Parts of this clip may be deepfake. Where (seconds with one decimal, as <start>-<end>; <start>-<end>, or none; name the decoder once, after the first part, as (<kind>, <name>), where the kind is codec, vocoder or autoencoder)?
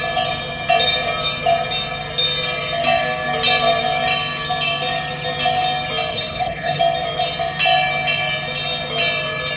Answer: 6.1-6.8 (codec, HILCodec)